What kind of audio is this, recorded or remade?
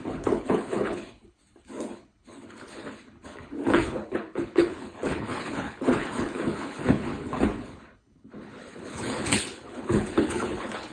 remade